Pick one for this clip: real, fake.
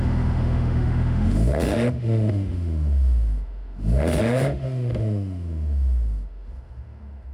fake